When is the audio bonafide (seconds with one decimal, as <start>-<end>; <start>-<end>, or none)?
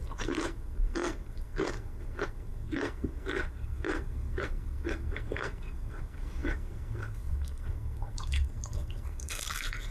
none